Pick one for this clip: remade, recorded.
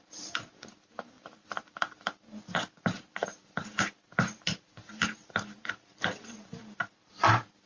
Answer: remade